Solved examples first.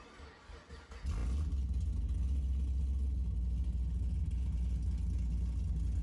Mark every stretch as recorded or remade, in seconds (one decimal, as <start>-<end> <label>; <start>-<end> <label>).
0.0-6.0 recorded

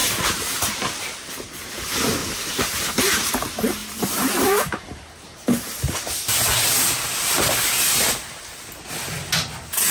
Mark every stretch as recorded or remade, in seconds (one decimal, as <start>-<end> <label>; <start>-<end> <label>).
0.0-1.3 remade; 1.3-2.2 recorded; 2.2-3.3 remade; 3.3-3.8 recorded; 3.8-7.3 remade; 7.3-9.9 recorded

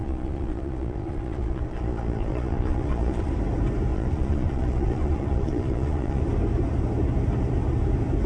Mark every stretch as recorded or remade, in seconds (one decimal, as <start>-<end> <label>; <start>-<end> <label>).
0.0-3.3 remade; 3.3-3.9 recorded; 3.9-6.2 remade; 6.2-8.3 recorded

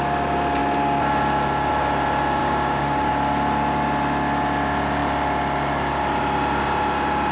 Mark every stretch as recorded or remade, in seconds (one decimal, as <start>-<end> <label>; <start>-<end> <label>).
0.0-2.4 recorded; 2.4-3.1 remade; 3.1-7.3 recorded